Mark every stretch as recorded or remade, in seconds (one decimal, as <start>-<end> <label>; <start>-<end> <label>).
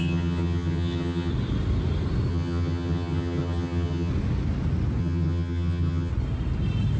0.0-1.3 remade; 1.3-2.3 recorded; 2.3-4.1 remade; 4.1-5.0 recorded; 5.0-6.1 remade; 6.1-7.0 recorded